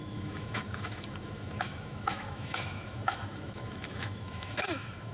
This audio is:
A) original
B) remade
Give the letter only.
B